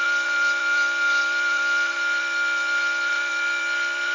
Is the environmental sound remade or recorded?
remade